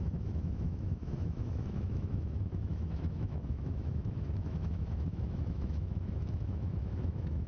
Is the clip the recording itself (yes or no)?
no